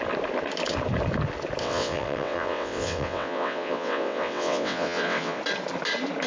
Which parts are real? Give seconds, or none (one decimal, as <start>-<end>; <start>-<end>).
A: 0.0-1.6; 5.4-6.3